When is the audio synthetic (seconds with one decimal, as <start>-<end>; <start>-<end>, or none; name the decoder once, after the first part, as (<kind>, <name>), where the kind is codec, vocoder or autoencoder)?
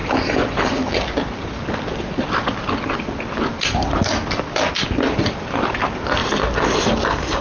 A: 0.0-4.4 (vocoder, BigVGAN v2); 6.2-6.9